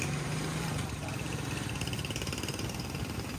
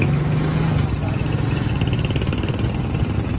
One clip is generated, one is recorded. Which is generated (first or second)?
first